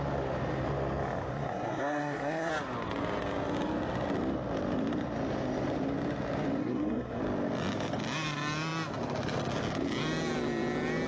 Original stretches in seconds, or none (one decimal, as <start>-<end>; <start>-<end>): 0.0-1.3; 2.5-6.6; 7.2-11.1